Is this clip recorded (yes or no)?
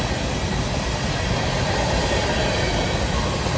yes